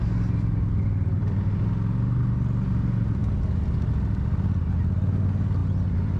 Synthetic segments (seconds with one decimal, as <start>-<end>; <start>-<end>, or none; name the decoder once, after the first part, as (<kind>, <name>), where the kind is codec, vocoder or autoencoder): none